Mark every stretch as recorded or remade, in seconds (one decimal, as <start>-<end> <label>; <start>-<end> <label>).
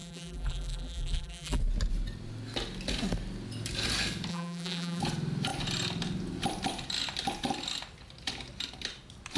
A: 0.0-1.6 remade; 1.6-4.3 recorded; 4.3-5.0 remade; 5.0-9.4 recorded